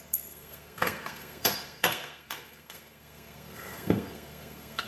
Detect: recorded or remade remade